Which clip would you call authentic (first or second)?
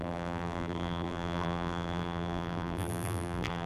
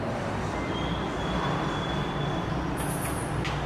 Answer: second